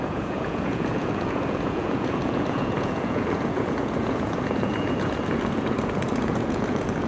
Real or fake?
fake